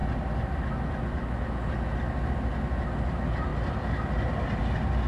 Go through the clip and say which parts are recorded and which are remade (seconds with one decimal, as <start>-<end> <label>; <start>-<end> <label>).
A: 0.0-5.1 recorded

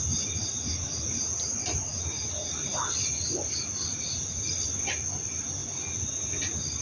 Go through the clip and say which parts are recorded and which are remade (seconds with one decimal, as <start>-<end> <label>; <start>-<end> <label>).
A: 0.0-6.8 recorded

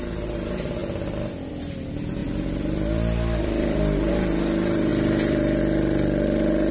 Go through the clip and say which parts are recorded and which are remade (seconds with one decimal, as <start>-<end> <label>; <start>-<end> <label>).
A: 0.0-2.2 recorded; 2.2-4.1 remade; 4.1-4.9 recorded; 4.9-5.6 remade; 5.6-6.7 recorded

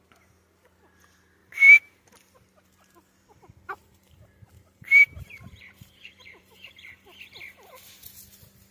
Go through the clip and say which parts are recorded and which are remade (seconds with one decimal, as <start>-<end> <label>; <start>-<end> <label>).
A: 0.0-1.4 recorded; 1.4-2.0 remade; 2.0-3.8 recorded; 3.8-6.8 remade; 6.8-8.7 recorded